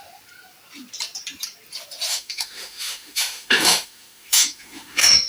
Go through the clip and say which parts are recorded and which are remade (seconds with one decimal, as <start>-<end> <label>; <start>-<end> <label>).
0.0-2.1 recorded; 2.1-5.3 remade